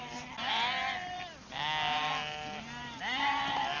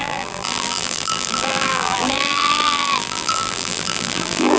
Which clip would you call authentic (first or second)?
first